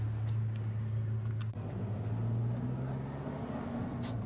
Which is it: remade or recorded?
recorded